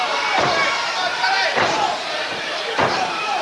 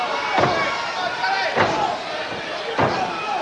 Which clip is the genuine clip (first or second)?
second